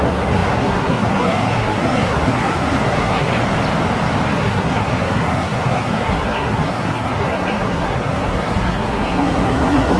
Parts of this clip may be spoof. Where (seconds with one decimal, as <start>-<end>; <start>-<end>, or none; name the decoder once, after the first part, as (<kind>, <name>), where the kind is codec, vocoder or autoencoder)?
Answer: 0.0-3.3 (codec, SNAC); 4.3-10.0